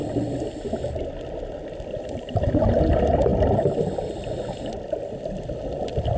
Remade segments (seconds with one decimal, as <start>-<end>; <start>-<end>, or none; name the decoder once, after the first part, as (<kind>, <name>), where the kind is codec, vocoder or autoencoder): none